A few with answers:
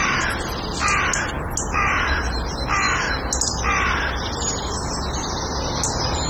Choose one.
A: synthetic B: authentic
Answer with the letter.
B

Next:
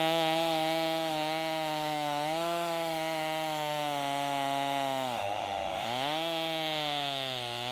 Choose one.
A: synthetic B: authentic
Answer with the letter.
A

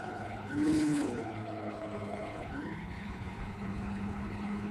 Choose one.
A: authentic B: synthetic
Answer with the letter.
B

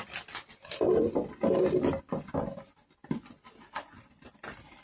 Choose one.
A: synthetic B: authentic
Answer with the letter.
B